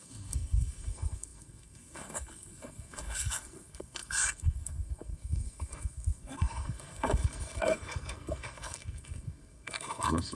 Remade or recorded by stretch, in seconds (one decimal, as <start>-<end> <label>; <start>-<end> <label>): 0.0-10.3 remade

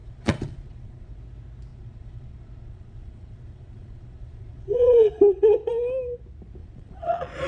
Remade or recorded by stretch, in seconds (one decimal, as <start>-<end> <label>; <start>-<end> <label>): 0.0-1.2 remade; 1.2-1.7 recorded; 1.7-5.7 remade; 5.7-6.6 recorded; 6.6-7.5 remade